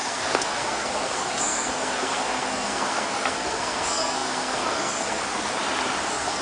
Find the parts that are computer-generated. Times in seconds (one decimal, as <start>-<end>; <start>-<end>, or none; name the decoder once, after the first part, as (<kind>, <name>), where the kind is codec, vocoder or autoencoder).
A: 0.0-5.2 (codec, SNAC); 6.0-6.4